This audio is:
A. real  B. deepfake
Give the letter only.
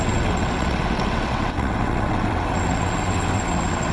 B